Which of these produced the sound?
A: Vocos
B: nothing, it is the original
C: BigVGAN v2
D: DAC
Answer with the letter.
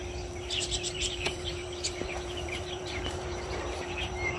C